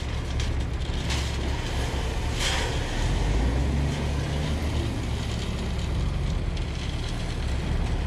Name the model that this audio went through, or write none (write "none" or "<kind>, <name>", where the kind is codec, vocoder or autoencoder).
none